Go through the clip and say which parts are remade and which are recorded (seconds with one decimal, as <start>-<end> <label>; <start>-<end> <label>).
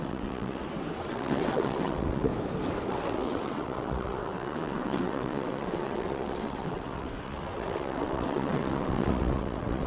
0.0-0.6 remade; 0.6-1.1 recorded; 1.1-2.3 remade; 2.3-2.9 recorded; 2.9-9.9 remade